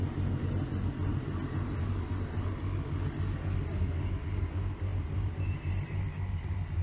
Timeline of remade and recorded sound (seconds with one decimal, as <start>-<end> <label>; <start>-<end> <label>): 0.0-1.1 recorded; 1.1-2.0 remade; 2.0-4.9 recorded; 4.9-6.0 remade; 6.0-6.8 recorded